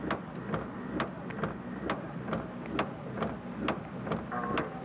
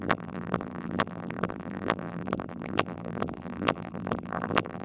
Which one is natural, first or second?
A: first